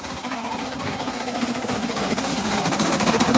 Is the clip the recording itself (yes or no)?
no